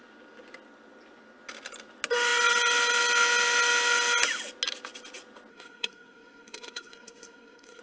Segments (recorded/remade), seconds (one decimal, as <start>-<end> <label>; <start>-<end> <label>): 0.0-5.5 recorded; 5.5-7.8 remade